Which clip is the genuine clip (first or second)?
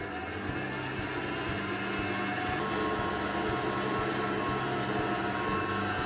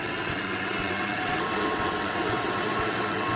first